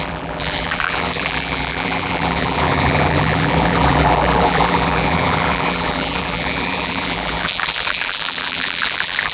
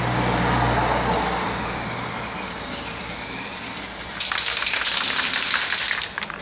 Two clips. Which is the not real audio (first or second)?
first